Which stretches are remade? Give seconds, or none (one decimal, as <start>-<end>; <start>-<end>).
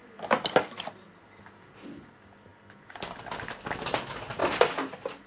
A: 2.5-3.8; 4.4-5.3